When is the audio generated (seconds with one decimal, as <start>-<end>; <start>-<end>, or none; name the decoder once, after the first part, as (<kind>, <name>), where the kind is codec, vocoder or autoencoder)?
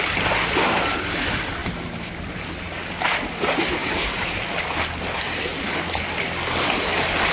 3.8-4.4 (vocoder, BigVGAN v2)